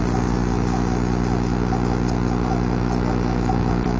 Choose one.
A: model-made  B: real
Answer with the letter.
B